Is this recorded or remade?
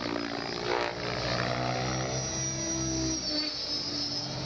recorded